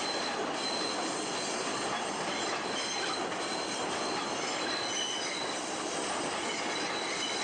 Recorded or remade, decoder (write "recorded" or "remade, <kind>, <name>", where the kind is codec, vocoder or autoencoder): recorded